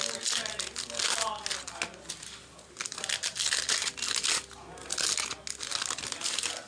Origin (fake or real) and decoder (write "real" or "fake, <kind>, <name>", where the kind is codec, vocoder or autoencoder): real